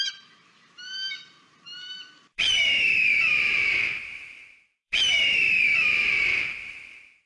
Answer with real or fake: fake